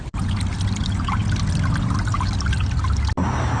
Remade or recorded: recorded